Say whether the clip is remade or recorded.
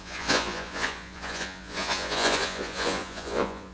remade